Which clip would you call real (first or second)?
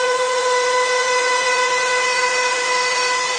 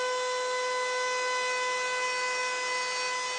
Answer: second